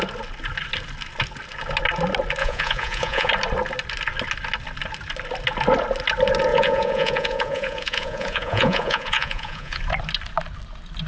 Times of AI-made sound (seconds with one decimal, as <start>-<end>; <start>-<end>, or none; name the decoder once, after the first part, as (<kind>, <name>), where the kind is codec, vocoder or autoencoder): 2.4-3.3 (vocoder, Vocos); 6.5-9.8